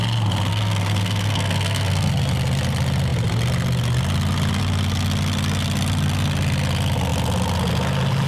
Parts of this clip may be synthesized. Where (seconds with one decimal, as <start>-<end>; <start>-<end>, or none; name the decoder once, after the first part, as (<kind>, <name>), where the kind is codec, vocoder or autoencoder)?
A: 0.5-2.1 (codec, SNAC)